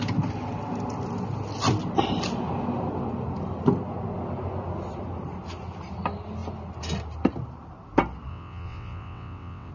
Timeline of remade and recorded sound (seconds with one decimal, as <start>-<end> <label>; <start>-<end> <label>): 0.0-8.3 recorded; 8.3-9.7 remade